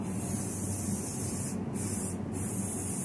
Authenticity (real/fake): real